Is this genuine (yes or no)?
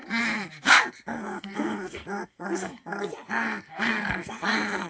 no